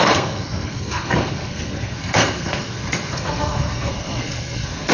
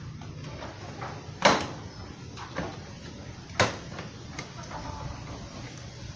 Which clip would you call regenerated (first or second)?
first